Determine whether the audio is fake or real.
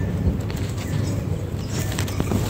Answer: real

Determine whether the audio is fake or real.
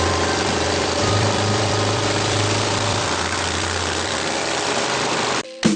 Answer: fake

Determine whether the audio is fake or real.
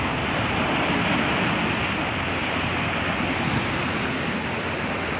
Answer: real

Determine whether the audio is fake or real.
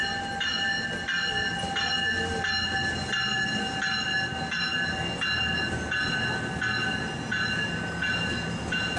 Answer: real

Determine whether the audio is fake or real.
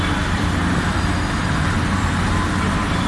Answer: real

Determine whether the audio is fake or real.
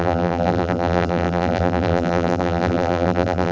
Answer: fake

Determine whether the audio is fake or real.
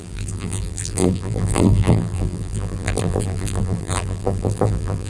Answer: fake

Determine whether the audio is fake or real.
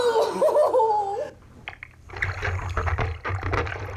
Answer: real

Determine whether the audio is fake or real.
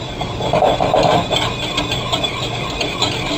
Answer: fake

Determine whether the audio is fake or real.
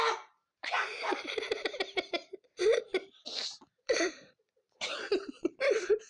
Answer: fake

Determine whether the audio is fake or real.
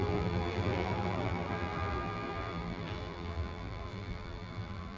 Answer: fake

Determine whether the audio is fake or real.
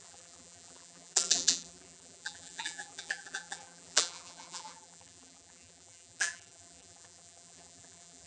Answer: fake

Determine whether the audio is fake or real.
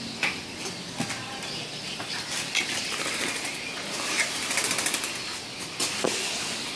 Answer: real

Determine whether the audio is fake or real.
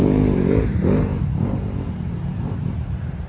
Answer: fake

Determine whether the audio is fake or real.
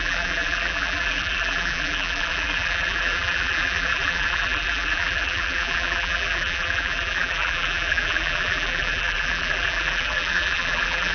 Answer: fake